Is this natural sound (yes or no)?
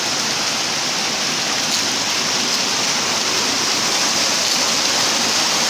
yes